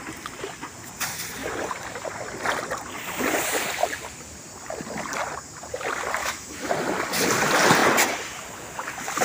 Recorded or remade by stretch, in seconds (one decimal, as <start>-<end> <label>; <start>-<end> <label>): 0.0-6.2 recorded; 6.2-6.7 remade; 6.7-9.2 recorded